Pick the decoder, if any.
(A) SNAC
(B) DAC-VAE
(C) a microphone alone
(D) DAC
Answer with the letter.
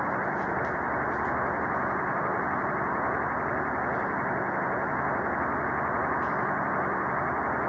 C